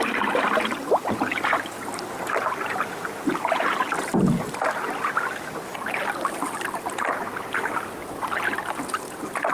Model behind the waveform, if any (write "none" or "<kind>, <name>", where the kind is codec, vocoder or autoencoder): none